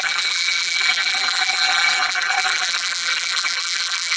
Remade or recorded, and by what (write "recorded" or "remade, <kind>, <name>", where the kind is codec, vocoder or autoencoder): remade, vocoder, BigVGAN v2